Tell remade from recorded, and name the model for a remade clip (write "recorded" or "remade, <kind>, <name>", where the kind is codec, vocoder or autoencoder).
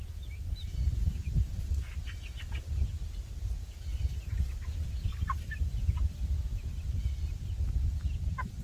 recorded